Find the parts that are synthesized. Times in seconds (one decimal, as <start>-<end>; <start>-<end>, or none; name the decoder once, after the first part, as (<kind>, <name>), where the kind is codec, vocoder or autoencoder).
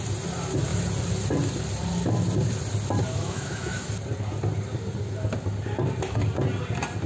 3.1-3.9 (autoencoder, DAC-VAE)